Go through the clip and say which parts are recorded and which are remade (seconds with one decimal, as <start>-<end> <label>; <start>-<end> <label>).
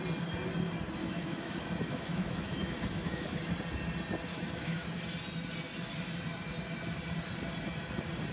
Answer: 0.0-1.0 recorded; 1.0-3.4 remade; 3.4-4.3 recorded; 4.3-5.0 remade; 5.0-8.3 recorded